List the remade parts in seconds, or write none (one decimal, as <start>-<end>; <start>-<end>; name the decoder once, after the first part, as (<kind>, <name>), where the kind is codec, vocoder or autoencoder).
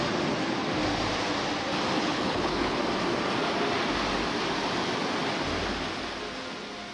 2.0-2.8 (codec, HILCodec)